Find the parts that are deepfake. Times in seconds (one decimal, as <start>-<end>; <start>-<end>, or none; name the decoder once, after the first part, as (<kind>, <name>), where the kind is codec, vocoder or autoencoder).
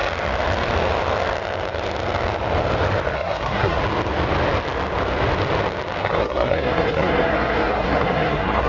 3.1-3.8 (codec, SNAC); 6.0-8.7